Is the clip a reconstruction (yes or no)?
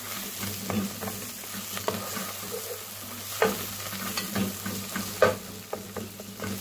no